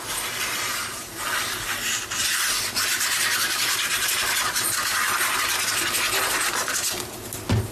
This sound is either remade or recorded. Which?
recorded